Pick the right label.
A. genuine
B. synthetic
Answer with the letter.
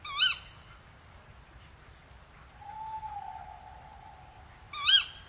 A